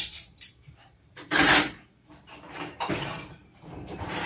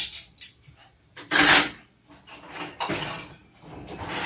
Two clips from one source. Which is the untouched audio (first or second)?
second